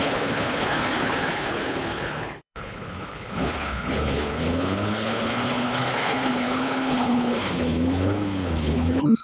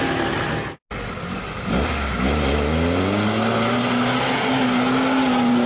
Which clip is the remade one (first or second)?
first